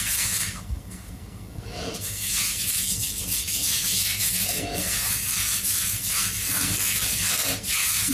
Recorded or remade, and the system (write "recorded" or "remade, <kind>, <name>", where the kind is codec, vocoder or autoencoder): remade, codec, SNAC